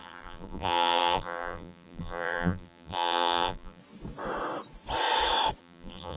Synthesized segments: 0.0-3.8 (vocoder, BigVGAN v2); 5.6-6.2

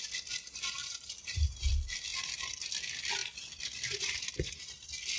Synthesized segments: 0.8-1.7 (vocoder, BigVGAN v2)